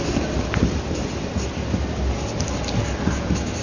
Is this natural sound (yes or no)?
yes